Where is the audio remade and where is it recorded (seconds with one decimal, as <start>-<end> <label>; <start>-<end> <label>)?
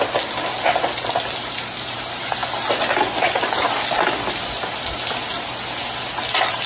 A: 0.0-6.7 recorded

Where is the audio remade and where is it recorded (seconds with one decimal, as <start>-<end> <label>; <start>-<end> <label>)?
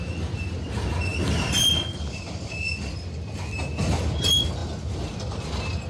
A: 0.0-1.1 recorded; 1.1-2.5 remade; 2.5-4.6 recorded; 4.6-5.9 remade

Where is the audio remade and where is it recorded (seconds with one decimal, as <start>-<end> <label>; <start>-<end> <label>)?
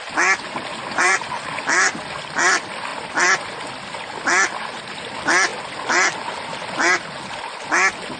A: 0.0-0.8 recorded; 0.8-1.6 remade; 1.6-8.2 recorded